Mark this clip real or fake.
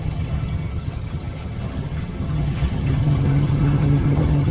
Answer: fake